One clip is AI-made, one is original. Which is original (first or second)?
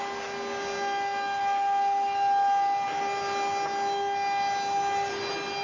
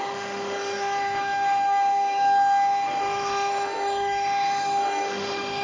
first